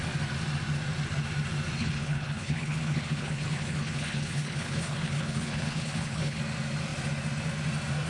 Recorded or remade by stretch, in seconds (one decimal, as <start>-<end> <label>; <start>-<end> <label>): 0.0-1.8 recorded; 1.8-6.4 remade; 6.4-8.1 recorded

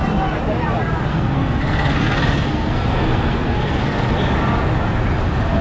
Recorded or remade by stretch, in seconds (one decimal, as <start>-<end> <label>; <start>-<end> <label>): 0.0-1.1 recorded; 1.1-4.2 remade; 4.2-5.6 recorded